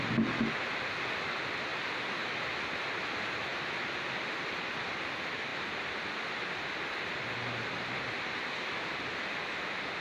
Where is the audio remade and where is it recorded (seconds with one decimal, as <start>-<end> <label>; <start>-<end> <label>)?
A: 0.0-10.0 recorded